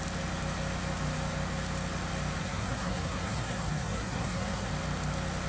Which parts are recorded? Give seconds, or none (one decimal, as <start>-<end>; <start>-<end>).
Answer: 0.0-2.4; 4.7-5.5